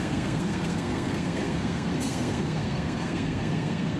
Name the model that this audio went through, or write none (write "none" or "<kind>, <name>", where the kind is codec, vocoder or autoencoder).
codec, SNAC